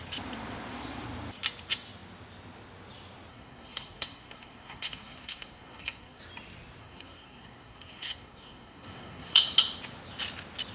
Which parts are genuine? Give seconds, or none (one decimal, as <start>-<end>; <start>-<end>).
0.0-3.3; 6.2-6.8; 9.5-10.7